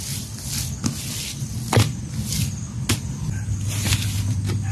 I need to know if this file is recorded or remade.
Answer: recorded